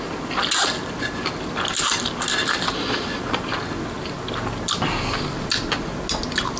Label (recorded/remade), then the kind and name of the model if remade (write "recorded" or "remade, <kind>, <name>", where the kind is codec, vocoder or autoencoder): recorded